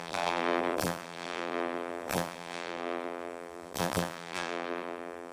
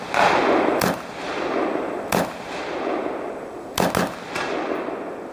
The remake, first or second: first